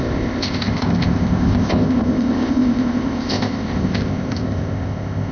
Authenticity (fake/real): fake